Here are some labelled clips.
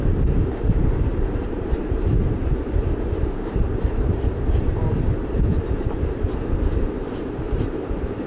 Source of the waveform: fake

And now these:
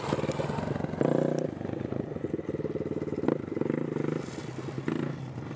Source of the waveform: real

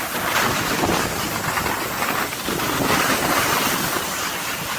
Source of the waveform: real